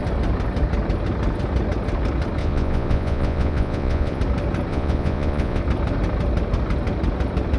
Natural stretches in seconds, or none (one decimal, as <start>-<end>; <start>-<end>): 0.0-2.4; 4.2-4.7; 5.6-7.6